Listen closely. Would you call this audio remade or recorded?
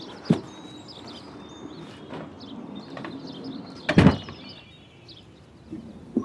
recorded